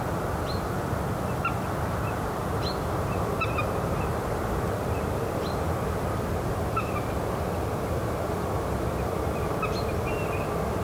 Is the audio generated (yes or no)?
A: no